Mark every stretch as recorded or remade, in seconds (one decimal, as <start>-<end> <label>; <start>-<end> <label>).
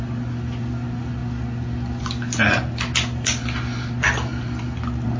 0.0-5.2 recorded